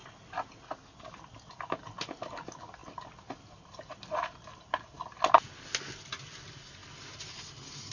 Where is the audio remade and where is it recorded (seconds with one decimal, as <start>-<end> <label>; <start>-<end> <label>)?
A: 0.0-7.9 recorded